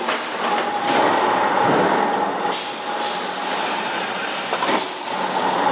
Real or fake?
real